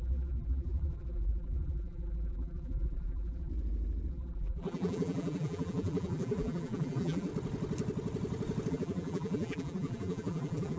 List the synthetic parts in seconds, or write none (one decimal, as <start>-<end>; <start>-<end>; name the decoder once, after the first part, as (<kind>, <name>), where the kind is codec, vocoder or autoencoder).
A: 0.0-3.5 (vocoder, BigVGAN v2); 4.1-7.3; 8.7-10.8